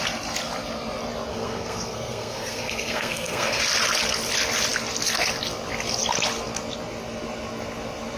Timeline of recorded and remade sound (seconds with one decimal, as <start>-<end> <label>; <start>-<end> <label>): 0.0-1.3 recorded; 1.3-3.6 remade; 3.6-8.2 recorded